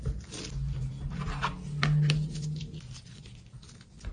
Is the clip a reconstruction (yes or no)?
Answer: no